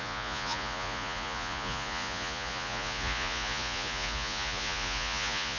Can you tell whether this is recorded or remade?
remade